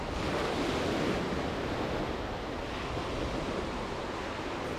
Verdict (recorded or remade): recorded